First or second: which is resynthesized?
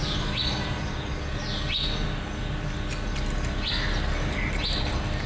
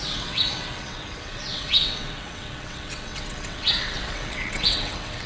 second